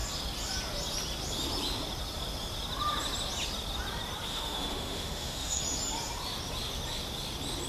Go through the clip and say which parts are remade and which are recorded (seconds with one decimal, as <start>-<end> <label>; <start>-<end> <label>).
0.0-4.3 recorded; 4.3-5.6 remade; 5.6-7.7 recorded